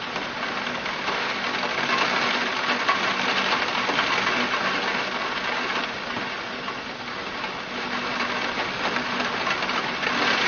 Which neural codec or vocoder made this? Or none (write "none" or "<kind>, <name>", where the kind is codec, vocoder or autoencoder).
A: none